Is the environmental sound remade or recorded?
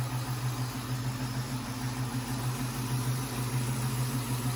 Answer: recorded